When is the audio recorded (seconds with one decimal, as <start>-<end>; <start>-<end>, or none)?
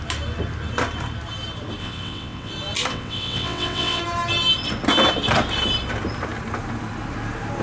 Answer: 0.0-1.8; 2.5-2.9; 4.0-7.6